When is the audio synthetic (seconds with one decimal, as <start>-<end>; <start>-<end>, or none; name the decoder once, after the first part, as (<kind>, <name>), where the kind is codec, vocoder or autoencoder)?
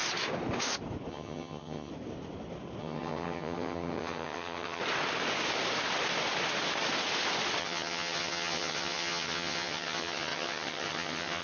1.1-1.9 (vocoder, HiFi-GAN); 2.8-4.8; 7.6-11.4